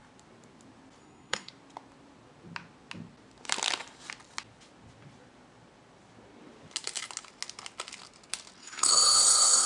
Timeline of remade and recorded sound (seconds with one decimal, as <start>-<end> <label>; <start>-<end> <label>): 0.0-1.0 recorded; 1.0-1.5 remade; 1.5-8.6 recorded; 8.6-9.7 remade